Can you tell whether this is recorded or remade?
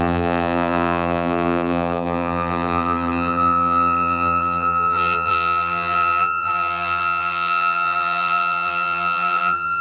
remade